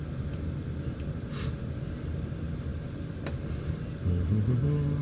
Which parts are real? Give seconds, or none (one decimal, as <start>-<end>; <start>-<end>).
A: 0.0-5.0